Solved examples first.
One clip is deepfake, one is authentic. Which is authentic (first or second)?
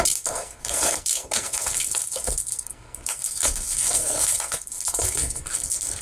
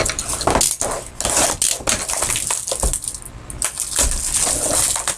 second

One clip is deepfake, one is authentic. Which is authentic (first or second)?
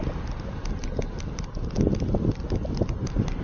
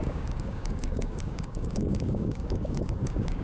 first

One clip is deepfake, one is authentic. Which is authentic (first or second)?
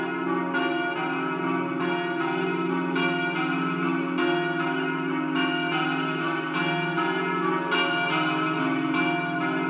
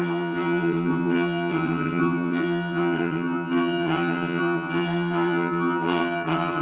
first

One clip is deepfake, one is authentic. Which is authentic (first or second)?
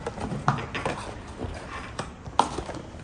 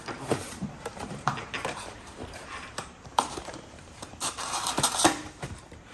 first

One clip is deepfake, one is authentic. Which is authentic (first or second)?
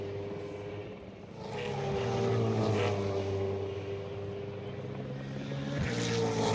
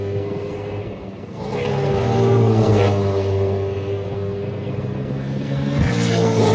first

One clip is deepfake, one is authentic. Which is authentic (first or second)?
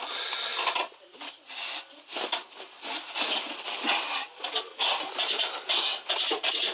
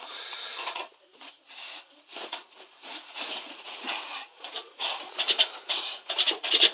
first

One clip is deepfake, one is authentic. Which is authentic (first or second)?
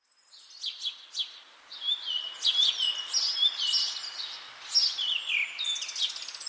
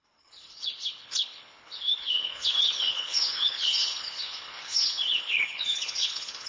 first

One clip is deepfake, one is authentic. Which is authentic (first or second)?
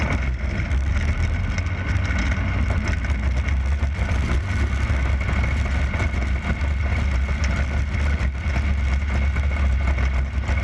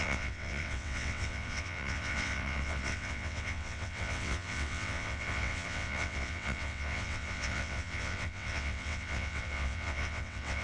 first